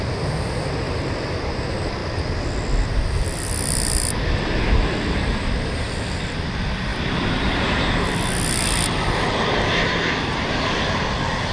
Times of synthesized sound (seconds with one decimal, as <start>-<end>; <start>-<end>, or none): 6.9-8.1